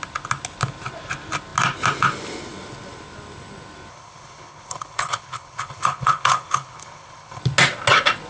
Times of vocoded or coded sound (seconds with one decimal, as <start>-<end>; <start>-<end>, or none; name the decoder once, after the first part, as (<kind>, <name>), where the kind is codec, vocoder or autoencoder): 3.9-7.4 (codec, HILCodec)